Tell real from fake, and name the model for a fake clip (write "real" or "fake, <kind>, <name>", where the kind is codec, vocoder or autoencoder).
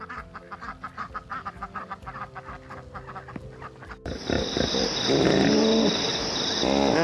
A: real